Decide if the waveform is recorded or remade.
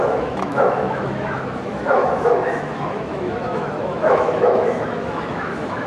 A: remade